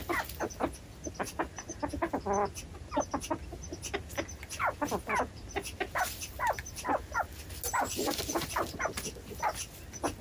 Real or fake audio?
real